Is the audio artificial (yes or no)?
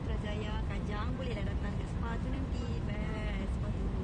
yes